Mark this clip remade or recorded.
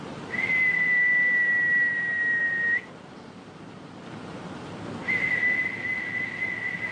recorded